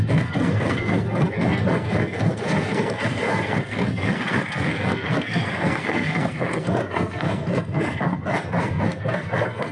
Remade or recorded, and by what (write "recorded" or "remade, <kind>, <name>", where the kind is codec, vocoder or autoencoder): remade, codec, SNAC